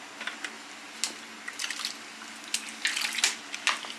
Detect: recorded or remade recorded